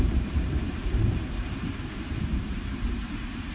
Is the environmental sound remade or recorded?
remade